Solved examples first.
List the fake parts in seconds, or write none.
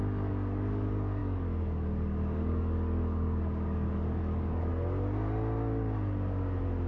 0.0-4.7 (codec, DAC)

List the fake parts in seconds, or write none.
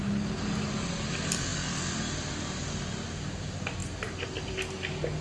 none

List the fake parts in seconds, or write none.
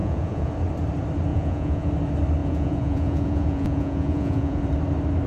0.0-0.5 (vocoder, Vocos); 1.3-1.9; 2.4-4.6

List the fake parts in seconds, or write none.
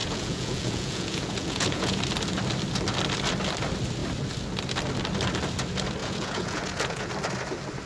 0.0-2.0 (vocoder, Vocos); 6.0-7.1